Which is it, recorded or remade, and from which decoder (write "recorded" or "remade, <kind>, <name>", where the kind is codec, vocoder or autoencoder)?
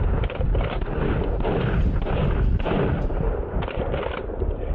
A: recorded